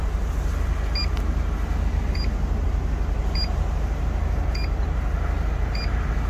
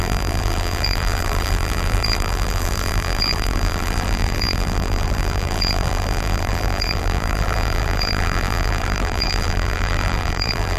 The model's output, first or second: second